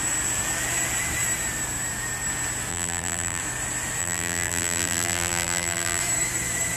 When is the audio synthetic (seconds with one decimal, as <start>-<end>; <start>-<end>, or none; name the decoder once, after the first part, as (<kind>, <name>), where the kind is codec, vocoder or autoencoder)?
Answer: 2.7-3.4 (vocoder, BigVGAN v2); 4.0-6.0